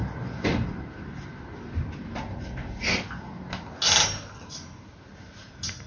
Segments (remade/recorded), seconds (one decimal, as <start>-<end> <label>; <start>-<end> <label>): 0.0-5.9 recorded